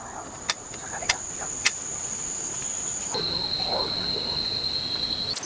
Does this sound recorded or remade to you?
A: recorded